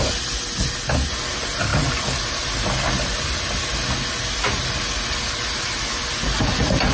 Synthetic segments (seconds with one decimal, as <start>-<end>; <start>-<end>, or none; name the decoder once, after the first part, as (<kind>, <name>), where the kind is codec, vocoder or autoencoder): none